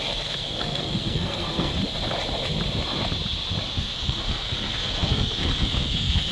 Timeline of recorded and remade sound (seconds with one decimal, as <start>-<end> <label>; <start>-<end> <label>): 0.0-1.7 remade; 1.7-3.7 recorded; 3.7-6.3 remade